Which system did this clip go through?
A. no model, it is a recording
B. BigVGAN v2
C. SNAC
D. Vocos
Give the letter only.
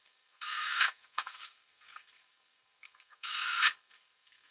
C